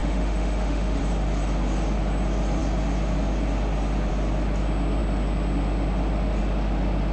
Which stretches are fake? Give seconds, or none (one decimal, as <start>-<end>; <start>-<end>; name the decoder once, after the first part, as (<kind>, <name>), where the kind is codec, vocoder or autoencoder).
0.0-1.0 (autoencoder, DAC-VAE)

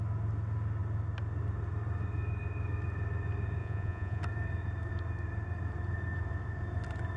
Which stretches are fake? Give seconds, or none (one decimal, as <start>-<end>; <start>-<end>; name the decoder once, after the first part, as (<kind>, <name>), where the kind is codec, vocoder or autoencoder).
3.6-4.2 (vocoder, Vocos)

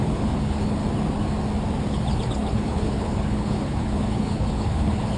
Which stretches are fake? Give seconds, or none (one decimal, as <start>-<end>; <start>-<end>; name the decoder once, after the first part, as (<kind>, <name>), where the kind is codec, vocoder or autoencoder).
0.0-0.8 (codec, HILCodec); 1.9-5.2

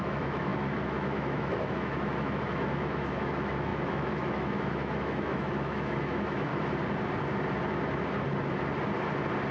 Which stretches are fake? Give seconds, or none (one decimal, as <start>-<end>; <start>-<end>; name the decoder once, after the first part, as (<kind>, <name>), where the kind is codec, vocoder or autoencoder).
0.0-6.5 (autoencoder, DAC-VAE)